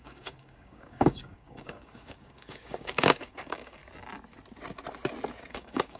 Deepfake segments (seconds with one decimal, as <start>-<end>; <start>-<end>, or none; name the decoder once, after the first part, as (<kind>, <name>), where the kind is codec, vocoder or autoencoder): 0.0-3.8 (codec, DAC); 5.5-6.0

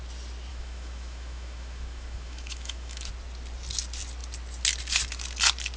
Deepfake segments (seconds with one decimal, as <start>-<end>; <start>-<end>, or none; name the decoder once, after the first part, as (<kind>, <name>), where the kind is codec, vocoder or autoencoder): 0.5-3.1 (autoencoder, DAC-VAE)

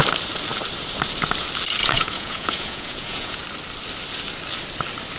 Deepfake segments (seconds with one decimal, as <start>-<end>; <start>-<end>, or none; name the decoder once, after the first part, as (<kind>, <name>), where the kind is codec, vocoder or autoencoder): 1.8-3.4 (vocoder, Vocos)

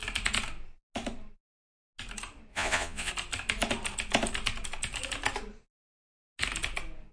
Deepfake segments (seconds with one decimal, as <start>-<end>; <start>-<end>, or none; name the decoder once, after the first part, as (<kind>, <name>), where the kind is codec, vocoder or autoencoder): 2.5-3.1 (vocoder, Vocos)